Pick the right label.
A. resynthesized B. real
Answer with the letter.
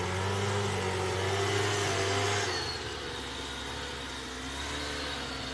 B